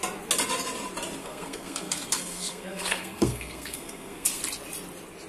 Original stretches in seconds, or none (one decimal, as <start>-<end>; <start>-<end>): 0.0-1.2; 4.4-5.3